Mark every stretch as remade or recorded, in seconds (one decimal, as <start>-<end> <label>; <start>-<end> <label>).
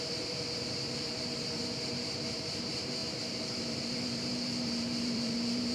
0.0-3.0 remade; 3.0-3.5 recorded; 3.5-5.7 remade